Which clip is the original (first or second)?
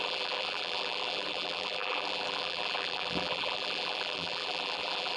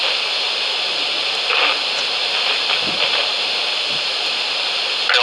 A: second